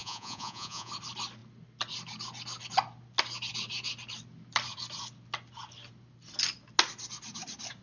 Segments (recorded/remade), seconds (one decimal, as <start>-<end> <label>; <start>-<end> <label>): 0.0-0.9 remade; 0.9-7.8 recorded